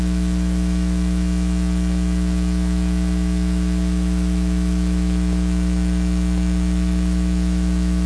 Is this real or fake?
fake